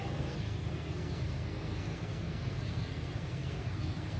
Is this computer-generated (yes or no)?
yes